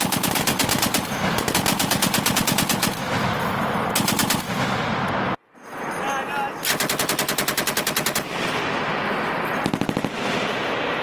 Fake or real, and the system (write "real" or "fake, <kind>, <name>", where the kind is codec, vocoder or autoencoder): real